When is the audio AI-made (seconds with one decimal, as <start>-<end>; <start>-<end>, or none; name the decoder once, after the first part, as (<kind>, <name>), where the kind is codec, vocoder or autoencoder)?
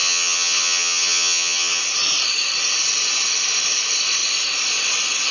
0.0-1.8 (vocoder, HiFi-GAN)